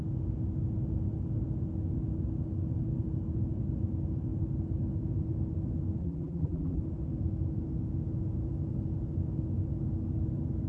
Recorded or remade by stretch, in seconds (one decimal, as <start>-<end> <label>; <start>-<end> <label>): 0.0-6.0 recorded; 6.0-6.8 remade; 6.8-10.7 recorded